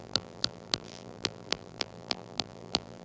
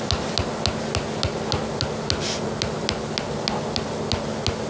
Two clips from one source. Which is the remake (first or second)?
first